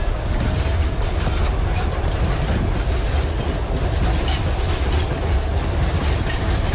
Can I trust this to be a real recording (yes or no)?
yes